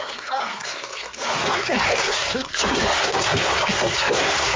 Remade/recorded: remade